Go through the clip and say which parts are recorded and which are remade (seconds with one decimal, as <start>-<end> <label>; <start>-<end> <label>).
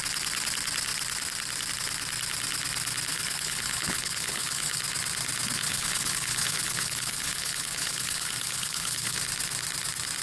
0.0-3.1 recorded; 3.1-4.8 remade; 4.8-5.6 recorded; 5.6-9.2 remade; 9.2-10.2 recorded